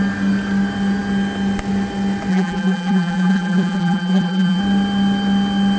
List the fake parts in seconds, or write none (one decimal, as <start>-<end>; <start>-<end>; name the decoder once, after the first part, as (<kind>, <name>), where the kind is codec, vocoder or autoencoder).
2.3-4.6 (vocoder, BigVGAN v2)

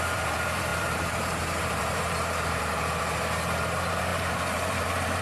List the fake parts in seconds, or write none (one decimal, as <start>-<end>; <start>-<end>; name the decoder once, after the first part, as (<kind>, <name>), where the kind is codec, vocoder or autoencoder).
0.0-5.2 (vocoder, BigVGAN v2)

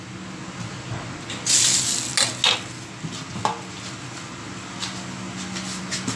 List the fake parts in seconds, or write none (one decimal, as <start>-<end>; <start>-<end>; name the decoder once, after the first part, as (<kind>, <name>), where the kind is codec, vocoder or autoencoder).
none

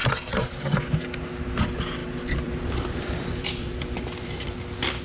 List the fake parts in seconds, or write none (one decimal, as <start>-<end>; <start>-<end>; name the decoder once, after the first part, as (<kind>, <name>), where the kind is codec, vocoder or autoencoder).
0.0-0.6 (vocoder, BigVGAN v2); 2.0-5.0

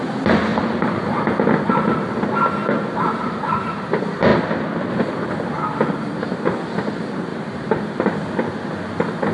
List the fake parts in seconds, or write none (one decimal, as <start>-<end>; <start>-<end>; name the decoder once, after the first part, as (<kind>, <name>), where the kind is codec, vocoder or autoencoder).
2.6-3.6 (vocoder, BigVGAN v2); 7.3-8.3